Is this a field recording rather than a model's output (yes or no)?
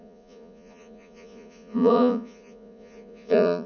no